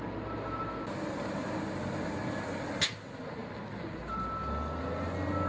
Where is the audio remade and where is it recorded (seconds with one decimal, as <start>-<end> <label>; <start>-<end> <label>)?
0.0-5.5 recorded